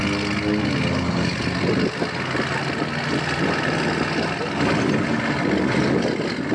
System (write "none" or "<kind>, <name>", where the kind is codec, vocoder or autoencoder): none